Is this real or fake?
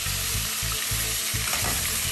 fake